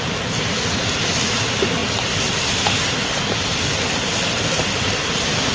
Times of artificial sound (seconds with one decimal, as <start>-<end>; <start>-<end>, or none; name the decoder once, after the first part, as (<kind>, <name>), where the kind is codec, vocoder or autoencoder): none